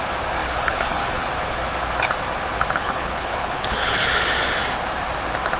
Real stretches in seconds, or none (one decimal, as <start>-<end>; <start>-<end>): 0.0-0.4; 1.3-2.8; 4.1-5.6